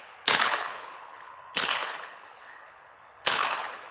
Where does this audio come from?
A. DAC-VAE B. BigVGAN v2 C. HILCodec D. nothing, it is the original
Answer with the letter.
C